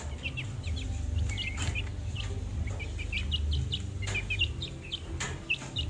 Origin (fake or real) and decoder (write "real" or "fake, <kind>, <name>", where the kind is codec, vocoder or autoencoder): real